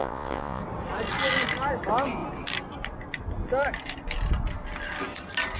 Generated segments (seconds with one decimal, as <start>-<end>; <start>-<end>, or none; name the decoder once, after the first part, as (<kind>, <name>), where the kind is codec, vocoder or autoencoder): 0.0-0.6 (vocoder, Vocos)